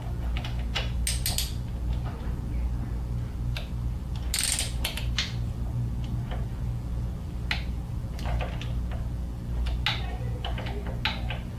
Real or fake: real